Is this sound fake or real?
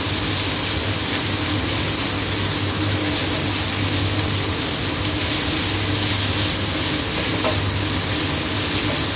real